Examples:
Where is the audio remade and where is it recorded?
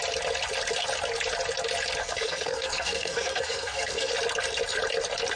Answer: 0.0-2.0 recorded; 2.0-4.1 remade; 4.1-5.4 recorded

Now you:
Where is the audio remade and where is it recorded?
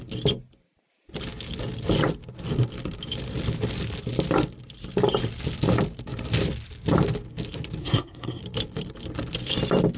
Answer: 0.0-7.8 recorded; 7.8-8.4 remade; 8.4-10.0 recorded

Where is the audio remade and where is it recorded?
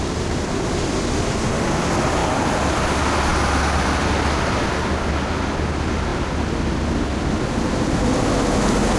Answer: 0.0-9.0 recorded